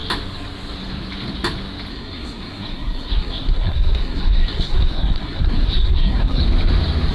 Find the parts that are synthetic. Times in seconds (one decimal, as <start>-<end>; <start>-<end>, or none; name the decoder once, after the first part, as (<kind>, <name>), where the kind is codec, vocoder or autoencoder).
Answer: 1.9-6.4 (codec, SNAC)